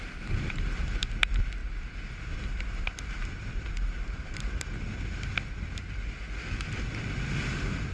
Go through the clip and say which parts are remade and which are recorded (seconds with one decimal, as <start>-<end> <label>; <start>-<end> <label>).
0.0-7.9 recorded